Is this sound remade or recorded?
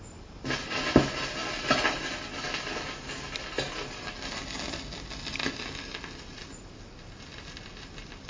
recorded